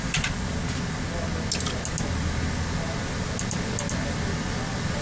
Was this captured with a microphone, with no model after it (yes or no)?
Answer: yes